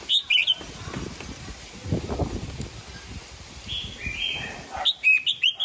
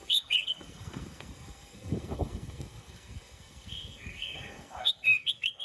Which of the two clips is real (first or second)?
first